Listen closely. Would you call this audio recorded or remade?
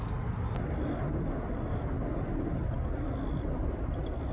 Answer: recorded